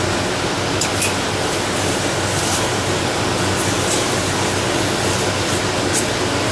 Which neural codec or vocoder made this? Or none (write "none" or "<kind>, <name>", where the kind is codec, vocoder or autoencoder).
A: none